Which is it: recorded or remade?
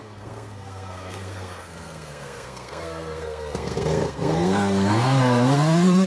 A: remade